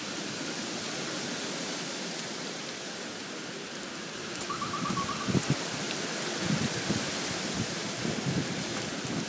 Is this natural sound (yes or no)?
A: yes